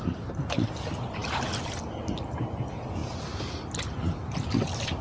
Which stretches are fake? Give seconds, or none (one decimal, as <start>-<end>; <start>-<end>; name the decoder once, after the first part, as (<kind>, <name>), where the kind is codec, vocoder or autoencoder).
3.0-3.7 (vocoder, BigVGAN v2)